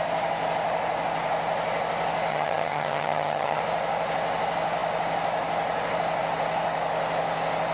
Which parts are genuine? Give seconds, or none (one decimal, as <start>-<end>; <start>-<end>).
0.0-2.3; 3.6-7.7